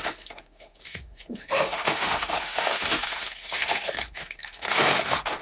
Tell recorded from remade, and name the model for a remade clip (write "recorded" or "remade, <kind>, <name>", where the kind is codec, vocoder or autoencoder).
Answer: remade, autoencoder, DAC-VAE